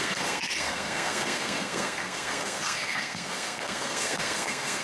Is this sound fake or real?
fake